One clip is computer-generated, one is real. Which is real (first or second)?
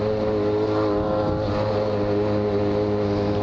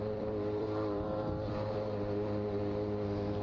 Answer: first